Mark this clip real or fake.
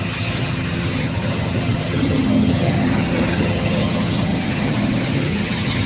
fake